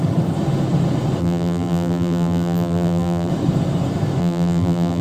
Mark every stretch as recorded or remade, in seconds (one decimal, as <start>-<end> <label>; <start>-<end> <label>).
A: 0.0-1.2 recorded; 1.2-3.3 remade; 3.3-4.2 recorded; 4.2-5.0 remade